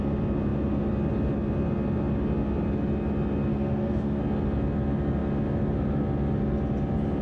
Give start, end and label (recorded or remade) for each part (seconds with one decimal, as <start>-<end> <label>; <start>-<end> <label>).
0.0-3.5 recorded; 3.5-4.2 remade; 4.2-7.2 recorded

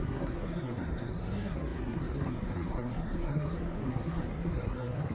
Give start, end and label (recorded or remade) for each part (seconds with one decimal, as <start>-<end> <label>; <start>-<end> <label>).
0.0-5.1 remade

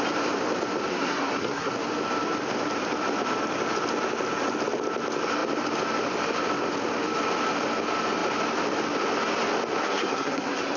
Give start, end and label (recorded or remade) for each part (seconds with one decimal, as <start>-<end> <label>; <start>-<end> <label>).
0.0-0.9 recorded; 0.9-1.7 remade; 1.7-9.8 recorded; 9.8-10.8 remade

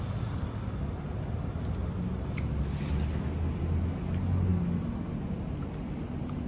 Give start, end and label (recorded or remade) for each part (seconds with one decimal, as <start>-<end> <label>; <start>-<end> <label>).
0.0-6.5 recorded

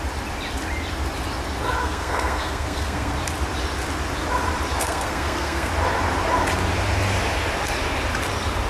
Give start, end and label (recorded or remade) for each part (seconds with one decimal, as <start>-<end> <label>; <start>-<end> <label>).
0.0-1.8 recorded; 1.8-3.1 remade; 3.1-4.8 recorded; 4.8-5.7 remade; 5.7-8.7 recorded

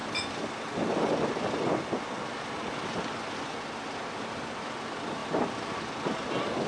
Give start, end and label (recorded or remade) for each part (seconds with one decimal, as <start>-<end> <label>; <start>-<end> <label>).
0.0-6.7 recorded

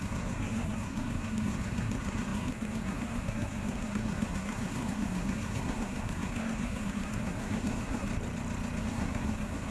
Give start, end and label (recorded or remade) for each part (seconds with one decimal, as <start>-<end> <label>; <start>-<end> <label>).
0.0-8.1 remade; 8.1-8.8 recorded; 8.8-9.7 remade

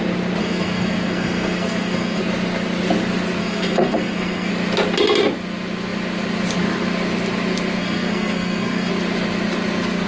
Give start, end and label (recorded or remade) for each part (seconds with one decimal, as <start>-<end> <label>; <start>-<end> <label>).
0.0-0.4 recorded; 0.4-2.2 remade; 2.2-3.4 recorded; 3.4-4.5 remade; 4.5-7.8 recorded; 7.8-8.9 remade; 8.9-10.1 recorded